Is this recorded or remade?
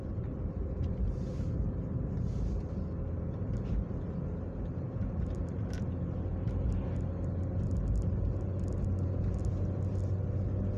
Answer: recorded